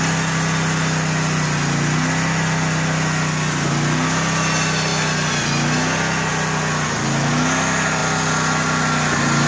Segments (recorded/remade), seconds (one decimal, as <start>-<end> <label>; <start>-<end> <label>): 0.0-9.5 recorded

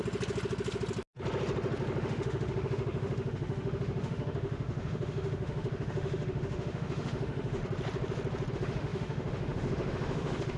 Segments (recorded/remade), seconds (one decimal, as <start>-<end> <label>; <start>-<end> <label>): 0.0-2.0 recorded; 2.0-7.6 remade; 7.6-8.5 recorded; 8.5-10.6 remade

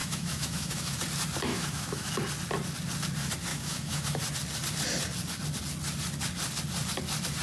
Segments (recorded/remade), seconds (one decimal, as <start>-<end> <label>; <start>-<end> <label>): 0.0-1.0 remade; 1.0-1.5 recorded; 1.5-2.1 remade; 2.1-3.5 recorded; 3.5-4.2 remade; 4.2-7.4 recorded